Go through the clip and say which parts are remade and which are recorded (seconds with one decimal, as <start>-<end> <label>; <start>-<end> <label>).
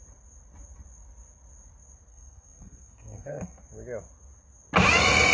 0.0-2.1 recorded; 2.1-3.6 remade; 3.6-5.3 recorded